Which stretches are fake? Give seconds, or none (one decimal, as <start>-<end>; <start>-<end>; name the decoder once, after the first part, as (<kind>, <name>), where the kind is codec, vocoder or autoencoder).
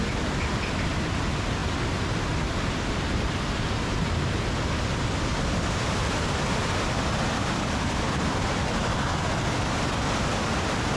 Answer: 5.3-9.1 (vocoder, BigVGAN v2)